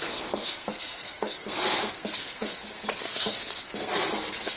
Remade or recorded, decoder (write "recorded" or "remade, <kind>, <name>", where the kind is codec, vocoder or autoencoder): remade, codec, SNAC